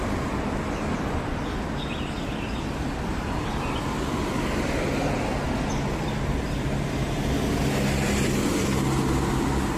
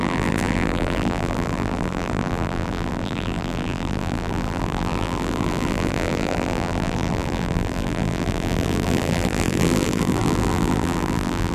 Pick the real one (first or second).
first